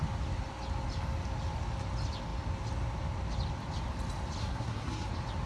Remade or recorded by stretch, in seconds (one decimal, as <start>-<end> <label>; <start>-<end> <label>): 0.0-4.4 recorded; 4.4-5.1 remade; 5.1-5.5 recorded